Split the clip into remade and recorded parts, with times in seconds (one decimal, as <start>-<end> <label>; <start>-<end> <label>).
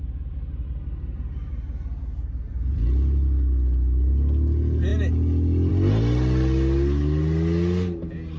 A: 0.0-8.4 recorded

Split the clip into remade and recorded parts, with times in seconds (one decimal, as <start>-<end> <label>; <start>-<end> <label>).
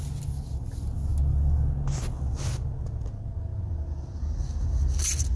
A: 0.0-5.4 recorded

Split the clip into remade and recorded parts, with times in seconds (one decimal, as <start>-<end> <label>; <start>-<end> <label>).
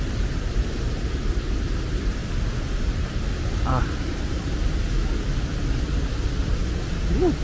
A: 0.0-7.4 recorded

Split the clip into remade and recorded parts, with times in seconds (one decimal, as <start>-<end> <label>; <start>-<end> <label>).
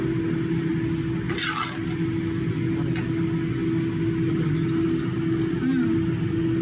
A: 0.0-6.6 recorded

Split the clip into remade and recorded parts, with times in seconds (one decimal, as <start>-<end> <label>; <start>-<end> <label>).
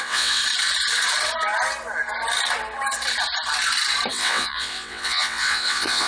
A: 0.0-0.4 remade; 0.4-4.1 recorded; 4.1-6.1 remade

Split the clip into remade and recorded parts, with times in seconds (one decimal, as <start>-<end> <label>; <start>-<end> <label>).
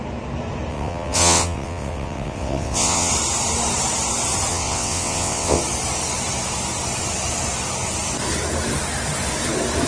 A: 0.0-0.7 recorded; 0.7-3.1 remade; 3.1-4.5 recorded; 4.5-5.6 remade; 5.6-9.9 recorded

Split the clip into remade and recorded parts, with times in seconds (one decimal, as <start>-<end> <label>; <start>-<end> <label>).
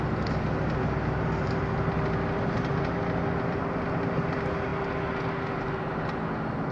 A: 0.0-6.7 recorded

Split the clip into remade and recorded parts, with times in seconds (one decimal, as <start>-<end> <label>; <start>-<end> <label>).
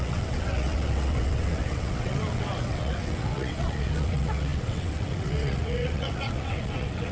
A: 0.0-7.1 remade